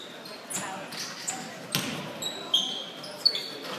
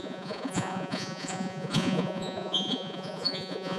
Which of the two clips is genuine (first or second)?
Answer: first